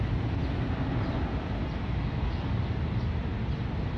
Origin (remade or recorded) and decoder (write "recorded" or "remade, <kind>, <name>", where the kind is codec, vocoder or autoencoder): recorded